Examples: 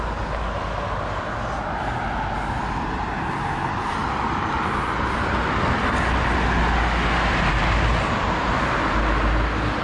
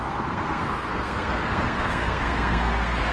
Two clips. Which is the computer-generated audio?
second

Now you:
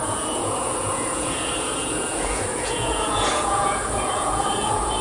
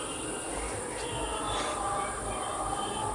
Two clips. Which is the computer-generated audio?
first